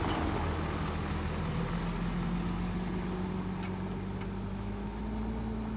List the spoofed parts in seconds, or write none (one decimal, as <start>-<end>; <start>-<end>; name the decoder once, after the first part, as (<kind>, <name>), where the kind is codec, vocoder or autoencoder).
4.5-5.0 (autoencoder, DAC-VAE)